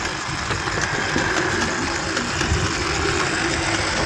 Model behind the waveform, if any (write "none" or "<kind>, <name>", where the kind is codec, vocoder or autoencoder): none